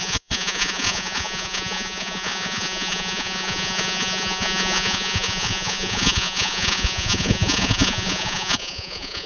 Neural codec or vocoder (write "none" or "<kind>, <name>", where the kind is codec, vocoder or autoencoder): vocoder, Vocos